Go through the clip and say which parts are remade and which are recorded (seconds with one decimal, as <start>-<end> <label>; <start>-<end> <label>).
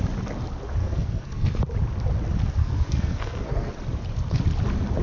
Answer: 0.0-0.8 recorded; 0.8-1.6 remade; 1.6-2.6 recorded; 2.6-3.7 remade; 3.7-5.0 recorded